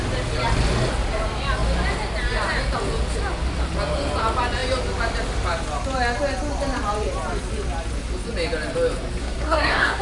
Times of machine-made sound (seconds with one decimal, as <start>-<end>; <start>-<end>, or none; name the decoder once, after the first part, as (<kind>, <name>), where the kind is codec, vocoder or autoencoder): 9.2-10.0 (codec, SNAC)